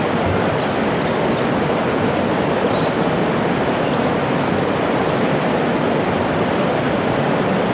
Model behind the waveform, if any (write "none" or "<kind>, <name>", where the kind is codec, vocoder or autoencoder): none